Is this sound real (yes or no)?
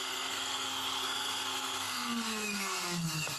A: no